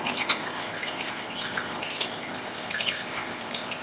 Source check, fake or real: fake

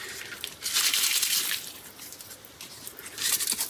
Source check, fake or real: real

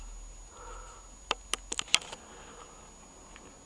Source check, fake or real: real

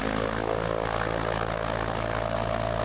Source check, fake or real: real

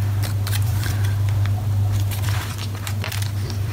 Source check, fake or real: fake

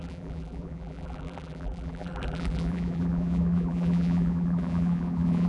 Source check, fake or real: fake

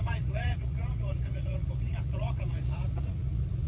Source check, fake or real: fake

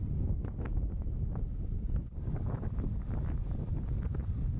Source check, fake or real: real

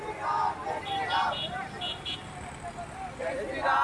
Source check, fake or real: real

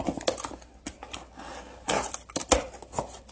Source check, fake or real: real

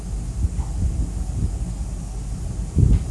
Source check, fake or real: real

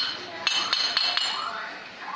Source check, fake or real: real